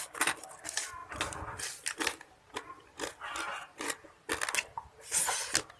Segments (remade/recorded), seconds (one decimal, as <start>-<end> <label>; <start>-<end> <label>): 0.0-5.8 recorded